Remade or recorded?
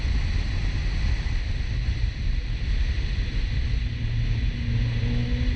recorded